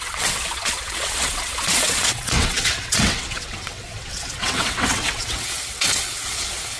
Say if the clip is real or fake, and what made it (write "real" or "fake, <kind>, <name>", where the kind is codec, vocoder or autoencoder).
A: fake, vocoder, WaveNeXt